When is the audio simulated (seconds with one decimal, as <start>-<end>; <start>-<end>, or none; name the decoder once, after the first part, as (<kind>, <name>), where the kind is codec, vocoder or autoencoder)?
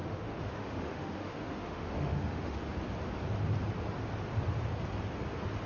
0.0-2.6 (autoencoder, DAC-VAE)